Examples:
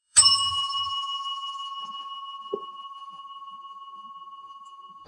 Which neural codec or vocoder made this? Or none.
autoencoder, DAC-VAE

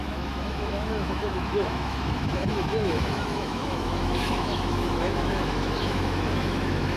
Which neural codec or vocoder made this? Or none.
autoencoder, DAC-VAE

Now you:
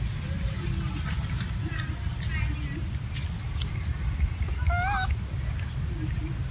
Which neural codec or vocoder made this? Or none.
none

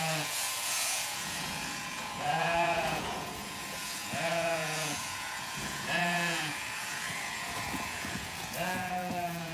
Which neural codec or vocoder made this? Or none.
vocoder, Vocos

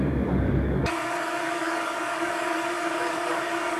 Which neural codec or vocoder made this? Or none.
codec, DAC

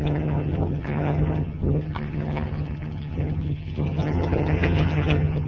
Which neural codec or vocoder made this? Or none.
vocoder, HiFi-GAN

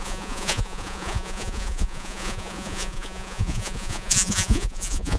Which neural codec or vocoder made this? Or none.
vocoder, Vocos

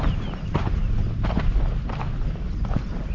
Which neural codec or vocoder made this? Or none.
none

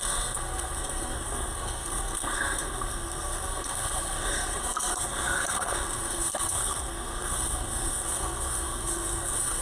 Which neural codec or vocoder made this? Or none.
codec, SNAC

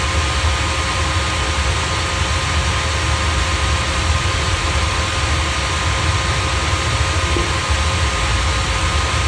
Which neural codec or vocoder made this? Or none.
none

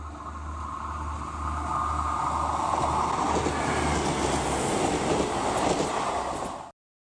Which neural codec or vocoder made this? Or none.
none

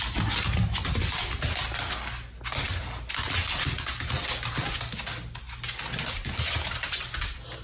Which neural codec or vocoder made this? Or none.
none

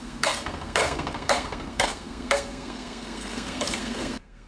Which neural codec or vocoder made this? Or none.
codec, SNAC